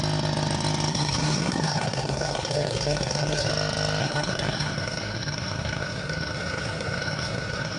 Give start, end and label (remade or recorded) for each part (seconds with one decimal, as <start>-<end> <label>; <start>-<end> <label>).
0.0-0.9 recorded; 0.9-3.5 remade; 3.5-4.0 recorded; 4.0-7.8 remade